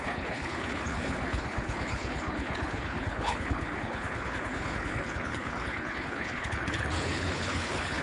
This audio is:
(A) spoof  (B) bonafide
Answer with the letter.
A